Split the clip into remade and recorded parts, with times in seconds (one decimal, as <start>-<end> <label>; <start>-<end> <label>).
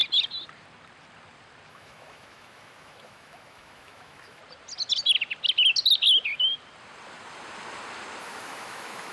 0.0-1.7 recorded; 1.7-4.4 remade; 4.4-8.2 recorded; 8.2-9.1 remade